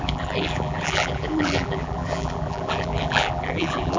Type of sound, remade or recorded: remade